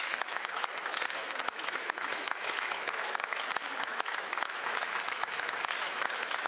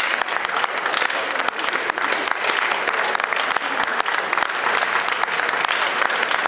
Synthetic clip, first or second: first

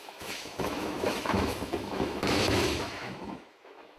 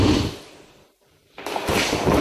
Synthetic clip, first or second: first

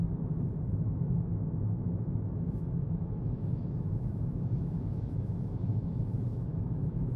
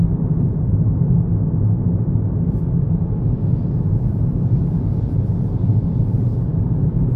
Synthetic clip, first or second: first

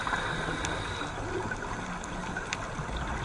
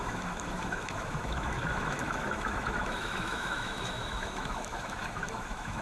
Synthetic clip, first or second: second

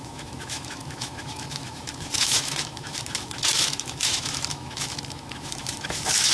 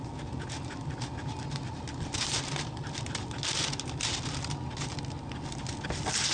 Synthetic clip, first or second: first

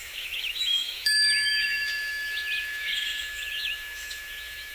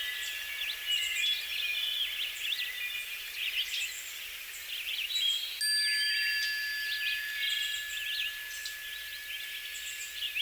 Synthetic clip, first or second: first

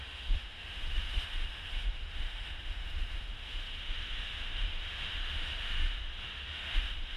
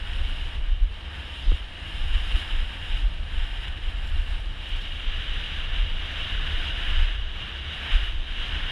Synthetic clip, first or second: first